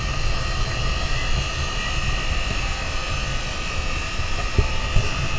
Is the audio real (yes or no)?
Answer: yes